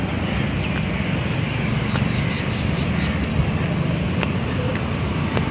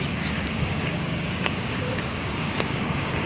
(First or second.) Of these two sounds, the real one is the first